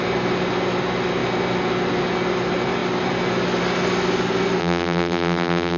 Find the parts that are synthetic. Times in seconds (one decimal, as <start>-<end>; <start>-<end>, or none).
4.6-5.8